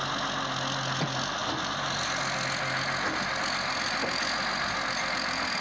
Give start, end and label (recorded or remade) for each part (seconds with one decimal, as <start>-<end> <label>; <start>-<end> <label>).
0.0-5.6 recorded